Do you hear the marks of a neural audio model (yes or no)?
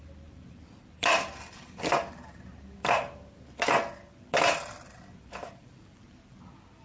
yes